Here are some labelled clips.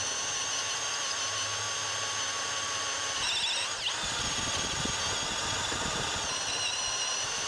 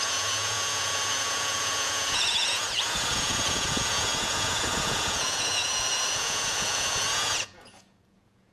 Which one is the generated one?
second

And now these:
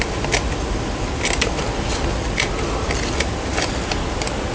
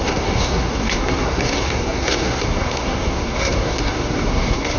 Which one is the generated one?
second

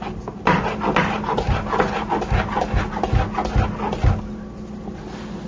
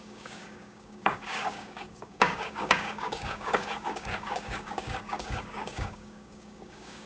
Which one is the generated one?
second